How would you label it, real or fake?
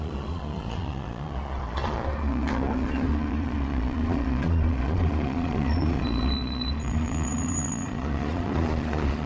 fake